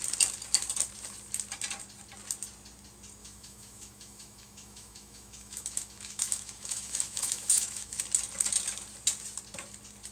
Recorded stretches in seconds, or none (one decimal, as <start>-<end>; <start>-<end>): 0.0-3.2; 8.0-10.1